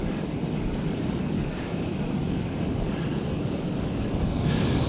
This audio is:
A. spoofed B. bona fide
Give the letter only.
A